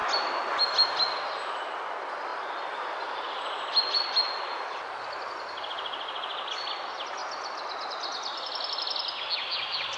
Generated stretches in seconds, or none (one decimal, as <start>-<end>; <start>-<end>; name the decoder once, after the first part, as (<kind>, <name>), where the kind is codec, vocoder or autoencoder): 7.2-7.9 (vocoder, BigVGAN v2)